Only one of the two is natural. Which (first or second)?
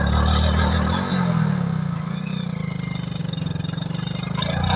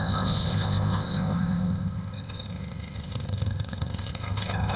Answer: first